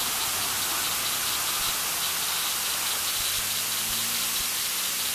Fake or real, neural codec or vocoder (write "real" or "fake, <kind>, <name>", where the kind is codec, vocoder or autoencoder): real